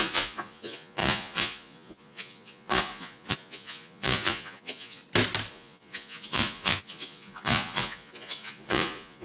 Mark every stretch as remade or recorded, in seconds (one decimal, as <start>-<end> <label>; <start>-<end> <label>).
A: 0.0-5.0 remade; 5.0-5.5 recorded; 5.5-9.2 remade